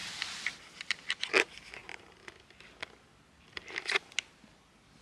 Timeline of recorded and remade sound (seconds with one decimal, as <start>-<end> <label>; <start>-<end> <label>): 0.0-5.0 recorded